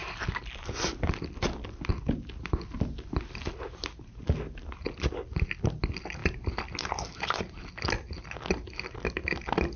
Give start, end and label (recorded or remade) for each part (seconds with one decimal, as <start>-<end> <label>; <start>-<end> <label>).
0.0-9.8 recorded